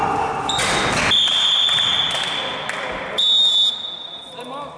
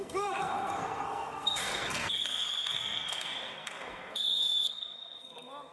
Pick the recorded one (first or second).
first